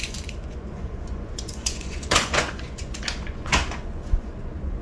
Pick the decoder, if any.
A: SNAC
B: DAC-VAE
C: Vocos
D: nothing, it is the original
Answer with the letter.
C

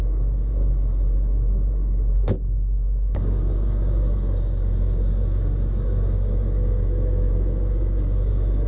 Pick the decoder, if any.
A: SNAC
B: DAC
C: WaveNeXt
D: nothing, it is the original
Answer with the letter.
B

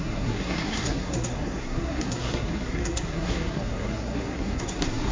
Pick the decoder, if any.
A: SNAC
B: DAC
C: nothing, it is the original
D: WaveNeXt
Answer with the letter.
A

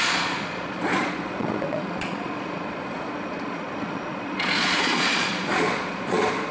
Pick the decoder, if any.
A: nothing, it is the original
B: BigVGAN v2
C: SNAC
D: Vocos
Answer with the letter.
D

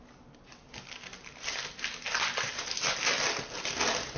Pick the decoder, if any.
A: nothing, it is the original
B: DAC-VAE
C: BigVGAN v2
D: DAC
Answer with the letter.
A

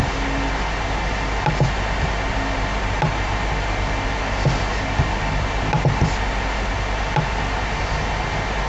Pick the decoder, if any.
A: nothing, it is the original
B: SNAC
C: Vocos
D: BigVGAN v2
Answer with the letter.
A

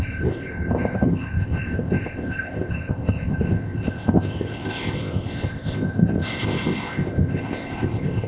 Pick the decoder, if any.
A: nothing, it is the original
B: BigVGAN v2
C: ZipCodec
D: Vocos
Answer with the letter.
C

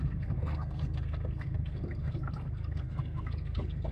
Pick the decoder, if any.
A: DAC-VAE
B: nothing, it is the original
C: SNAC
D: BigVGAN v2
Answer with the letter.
C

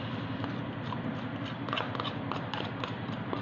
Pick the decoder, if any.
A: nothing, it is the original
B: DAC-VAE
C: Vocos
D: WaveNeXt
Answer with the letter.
A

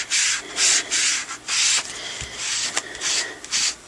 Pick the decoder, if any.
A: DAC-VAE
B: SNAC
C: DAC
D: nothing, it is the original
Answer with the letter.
D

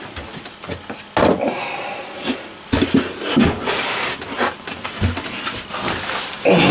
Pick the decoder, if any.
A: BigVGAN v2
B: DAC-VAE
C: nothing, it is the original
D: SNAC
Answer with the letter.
C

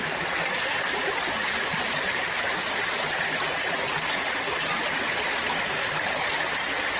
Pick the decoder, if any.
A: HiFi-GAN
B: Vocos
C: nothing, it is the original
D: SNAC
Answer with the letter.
C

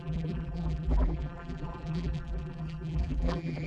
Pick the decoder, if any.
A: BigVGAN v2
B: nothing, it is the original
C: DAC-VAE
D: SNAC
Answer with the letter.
A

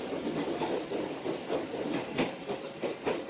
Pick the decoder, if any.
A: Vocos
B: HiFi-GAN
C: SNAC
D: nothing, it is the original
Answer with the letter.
D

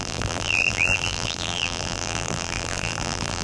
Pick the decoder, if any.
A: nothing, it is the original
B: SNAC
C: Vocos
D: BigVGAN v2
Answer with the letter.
D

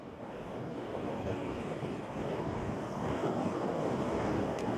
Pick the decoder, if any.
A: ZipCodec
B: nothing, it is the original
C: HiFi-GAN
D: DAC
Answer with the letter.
D